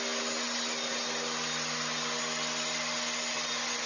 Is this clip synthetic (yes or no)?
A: no